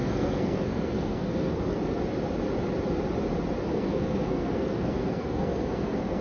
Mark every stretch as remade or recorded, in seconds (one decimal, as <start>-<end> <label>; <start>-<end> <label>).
0.0-2.0 remade; 2.0-3.7 recorded; 3.7-6.2 remade